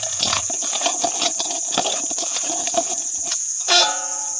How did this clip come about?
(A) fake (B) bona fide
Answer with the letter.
A